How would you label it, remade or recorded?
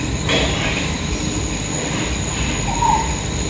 recorded